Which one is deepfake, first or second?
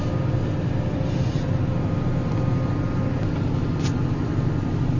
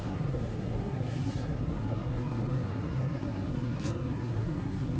second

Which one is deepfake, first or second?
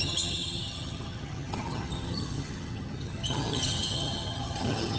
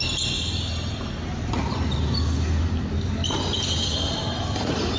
first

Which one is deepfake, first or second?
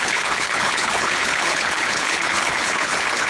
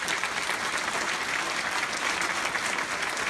first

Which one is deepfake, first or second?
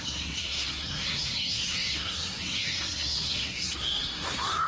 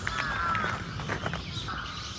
first